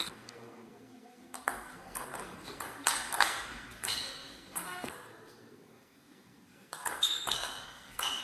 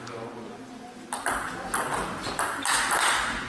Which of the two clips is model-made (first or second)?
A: first